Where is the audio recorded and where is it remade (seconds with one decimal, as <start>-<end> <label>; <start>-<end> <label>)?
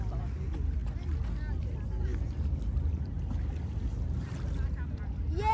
0.0-5.5 recorded